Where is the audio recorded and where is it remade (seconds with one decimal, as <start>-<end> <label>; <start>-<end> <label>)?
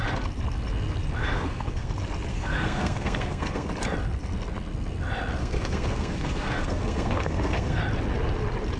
0.0-1.2 recorded; 1.2-1.9 remade; 1.9-2.3 recorded; 2.3-3.7 remade; 3.7-5.4 recorded; 5.4-7.8 remade; 7.8-8.8 recorded